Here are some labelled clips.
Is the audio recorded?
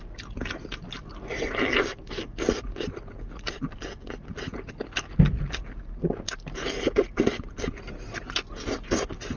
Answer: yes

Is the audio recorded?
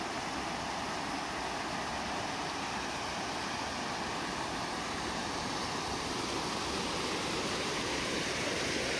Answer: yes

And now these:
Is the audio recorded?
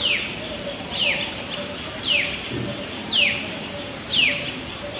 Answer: yes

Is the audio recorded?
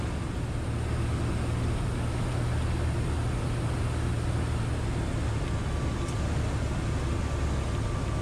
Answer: yes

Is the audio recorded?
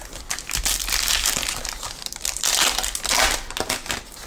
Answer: yes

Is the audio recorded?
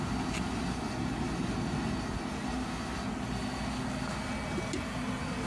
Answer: yes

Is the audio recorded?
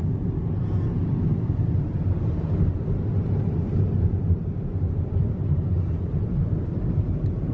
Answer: no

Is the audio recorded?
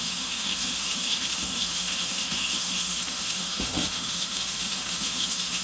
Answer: no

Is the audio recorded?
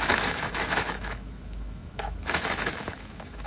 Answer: no